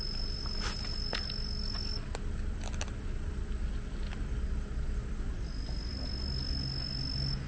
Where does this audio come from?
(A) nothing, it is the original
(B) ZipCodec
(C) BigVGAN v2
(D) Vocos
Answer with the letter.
A